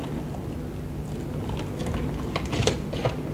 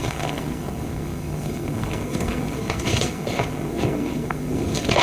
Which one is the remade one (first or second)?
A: second